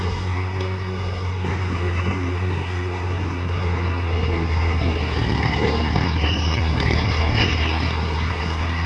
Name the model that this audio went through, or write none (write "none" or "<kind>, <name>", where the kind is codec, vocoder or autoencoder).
codec, SNAC